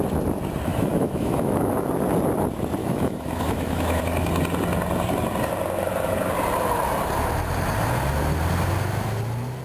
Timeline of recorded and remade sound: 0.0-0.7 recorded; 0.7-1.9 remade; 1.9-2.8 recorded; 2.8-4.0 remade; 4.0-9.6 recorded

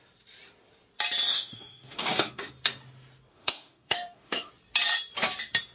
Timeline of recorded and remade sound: 0.0-1.3 recorded; 1.3-2.5 remade; 2.5-3.3 recorded; 3.3-4.5 remade; 4.5-5.7 recorded

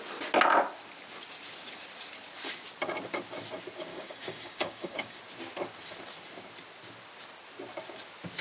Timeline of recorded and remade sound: 0.0-3.9 recorded; 3.9-5.2 remade; 5.2-8.4 recorded

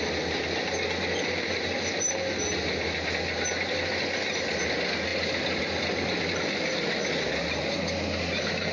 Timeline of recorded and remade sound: 0.0-8.7 recorded

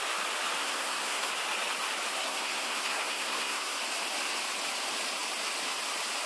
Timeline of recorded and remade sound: 0.0-0.6 recorded; 0.6-1.3 remade; 1.3-2.1 recorded; 2.1-3.8 remade; 3.8-6.3 recorded

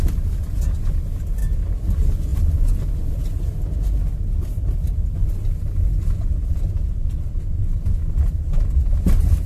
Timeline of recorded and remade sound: 0.0-9.5 recorded

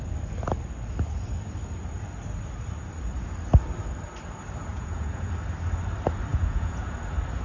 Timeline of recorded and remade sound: 0.0-4.7 recorded; 4.7-5.3 remade; 5.3-6.3 recorded; 6.3-6.9 remade; 6.9-7.4 recorded

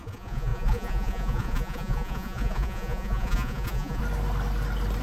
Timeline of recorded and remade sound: 0.0-4.0 remade; 4.0-5.0 recorded